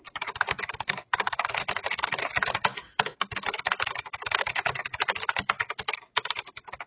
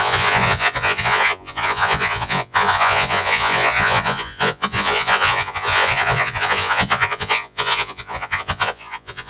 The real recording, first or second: first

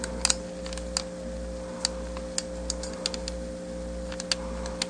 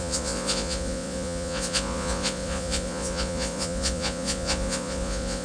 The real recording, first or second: first